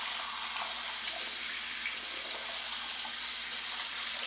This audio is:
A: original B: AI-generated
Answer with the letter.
A